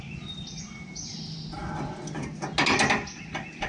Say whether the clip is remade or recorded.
recorded